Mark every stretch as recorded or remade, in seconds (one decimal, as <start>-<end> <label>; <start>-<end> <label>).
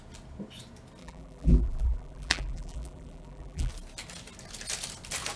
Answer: 0.0-1.0 recorded; 1.0-3.7 remade; 3.7-5.4 recorded